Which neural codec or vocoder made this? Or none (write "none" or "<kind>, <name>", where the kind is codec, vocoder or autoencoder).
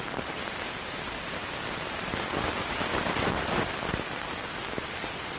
none